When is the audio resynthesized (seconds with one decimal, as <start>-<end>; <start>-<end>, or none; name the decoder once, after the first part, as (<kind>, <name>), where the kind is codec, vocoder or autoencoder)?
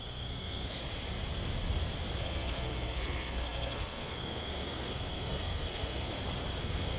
0.0-0.8 (codec, SNAC); 2.2-6.1; 6.6-7.0